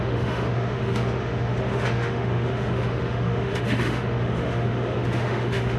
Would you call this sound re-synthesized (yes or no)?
yes